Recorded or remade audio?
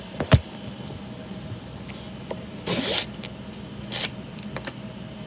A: recorded